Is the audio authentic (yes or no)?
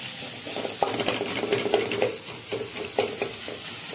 yes